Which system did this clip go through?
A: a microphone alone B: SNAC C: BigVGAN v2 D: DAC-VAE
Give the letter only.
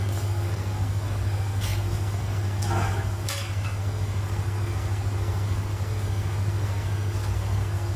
B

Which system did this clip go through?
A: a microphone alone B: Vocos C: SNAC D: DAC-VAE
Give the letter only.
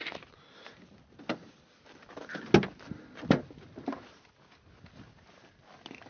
A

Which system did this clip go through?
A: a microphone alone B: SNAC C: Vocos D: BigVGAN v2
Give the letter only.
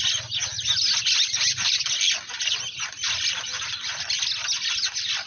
A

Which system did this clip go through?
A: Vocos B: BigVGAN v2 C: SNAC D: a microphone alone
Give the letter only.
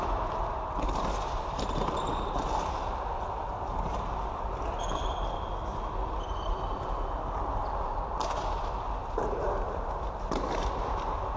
D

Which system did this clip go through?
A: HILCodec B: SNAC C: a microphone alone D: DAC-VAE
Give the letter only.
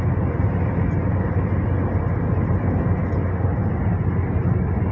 C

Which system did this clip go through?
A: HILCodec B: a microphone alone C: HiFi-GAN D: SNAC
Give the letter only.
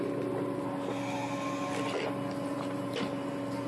B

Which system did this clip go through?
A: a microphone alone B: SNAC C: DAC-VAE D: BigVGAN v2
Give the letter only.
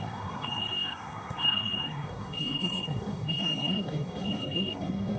B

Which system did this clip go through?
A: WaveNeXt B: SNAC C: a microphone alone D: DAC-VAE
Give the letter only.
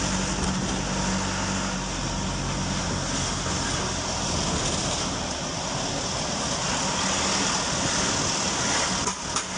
C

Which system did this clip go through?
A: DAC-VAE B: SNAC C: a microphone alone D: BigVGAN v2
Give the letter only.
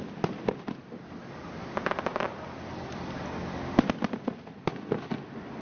C